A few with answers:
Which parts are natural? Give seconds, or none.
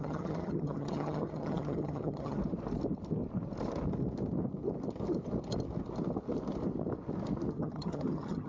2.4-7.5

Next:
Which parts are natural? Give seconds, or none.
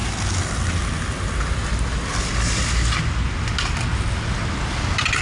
0.0-5.2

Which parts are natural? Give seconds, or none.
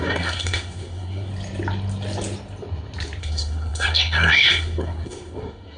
1.3-3.2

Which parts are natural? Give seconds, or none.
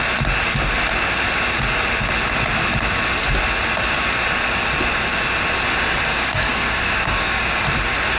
0.0-6.1; 7.6-8.2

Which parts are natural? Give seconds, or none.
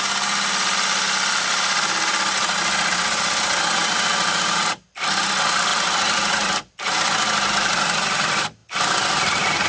0.0-9.7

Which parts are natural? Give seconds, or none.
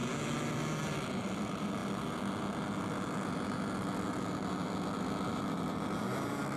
0.0-1.2; 1.8-5.3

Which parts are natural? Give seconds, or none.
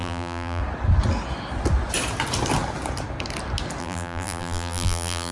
0.6-3.8